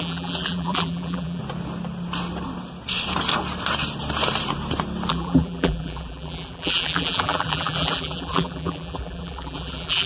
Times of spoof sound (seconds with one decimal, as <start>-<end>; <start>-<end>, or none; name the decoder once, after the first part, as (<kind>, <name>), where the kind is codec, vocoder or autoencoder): 0.0-1.4 (vocoder, BigVGAN v2); 5.1-10.1